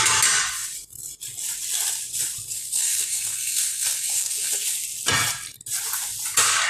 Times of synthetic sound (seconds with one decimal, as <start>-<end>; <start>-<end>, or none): 2.5-4.6